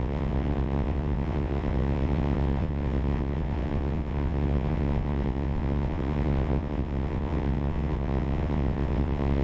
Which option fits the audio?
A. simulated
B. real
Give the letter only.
A